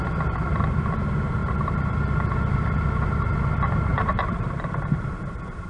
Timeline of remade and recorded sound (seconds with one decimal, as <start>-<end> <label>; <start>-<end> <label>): 0.0-1.4 recorded; 1.4-3.3 remade; 3.3-3.9 recorded; 3.9-5.7 remade